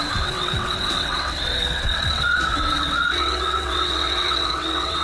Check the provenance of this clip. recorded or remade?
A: remade